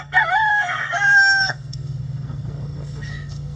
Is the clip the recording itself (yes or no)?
no